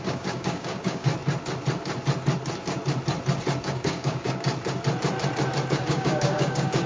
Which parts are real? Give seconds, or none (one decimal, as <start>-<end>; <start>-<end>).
1.1-3.6; 4.5-5.7